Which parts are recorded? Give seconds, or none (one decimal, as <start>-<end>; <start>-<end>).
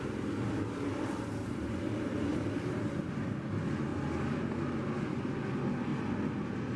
0.0-2.3; 3.3-6.8